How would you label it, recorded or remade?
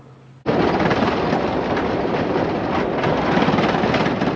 recorded